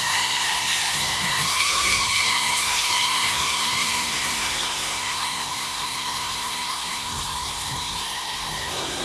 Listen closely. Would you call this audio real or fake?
fake